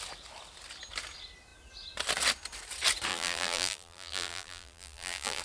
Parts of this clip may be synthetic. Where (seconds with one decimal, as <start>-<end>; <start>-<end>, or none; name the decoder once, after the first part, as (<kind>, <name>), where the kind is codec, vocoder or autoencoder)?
3.1-5.4 (vocoder, BigVGAN v2)

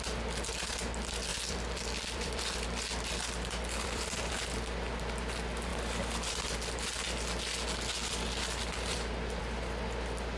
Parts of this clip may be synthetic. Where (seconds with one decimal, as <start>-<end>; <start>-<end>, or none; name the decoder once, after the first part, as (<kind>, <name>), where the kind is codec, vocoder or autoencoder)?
1.3-4.3 (vocoder, BigVGAN v2); 8.0-9.4

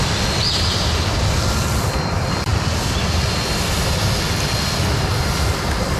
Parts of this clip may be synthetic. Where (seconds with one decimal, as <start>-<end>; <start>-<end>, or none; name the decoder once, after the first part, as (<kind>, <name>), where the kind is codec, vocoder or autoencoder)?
0.0-6.0 (vocoder, BigVGAN v2)

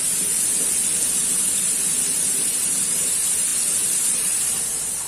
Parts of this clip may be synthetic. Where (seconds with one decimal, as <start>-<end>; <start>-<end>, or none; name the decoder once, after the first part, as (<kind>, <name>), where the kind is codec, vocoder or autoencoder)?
0.0-5.1 (vocoder, BigVGAN v2)

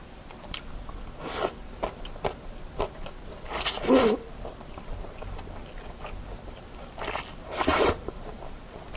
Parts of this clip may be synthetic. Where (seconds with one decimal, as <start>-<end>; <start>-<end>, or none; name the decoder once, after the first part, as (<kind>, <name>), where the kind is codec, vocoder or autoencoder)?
7.7-8.6 (vocoder, BigVGAN v2)

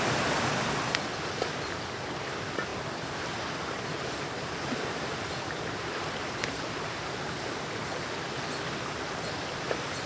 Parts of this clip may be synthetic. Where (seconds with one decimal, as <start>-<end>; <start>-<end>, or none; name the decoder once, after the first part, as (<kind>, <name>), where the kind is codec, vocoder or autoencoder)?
2.7-7.2 (vocoder, BigVGAN v2)

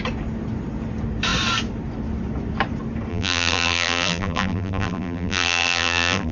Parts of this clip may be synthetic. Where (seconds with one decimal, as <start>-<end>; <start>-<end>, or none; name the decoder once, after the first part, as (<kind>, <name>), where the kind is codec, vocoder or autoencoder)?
3.1-6.3 (vocoder, BigVGAN v2)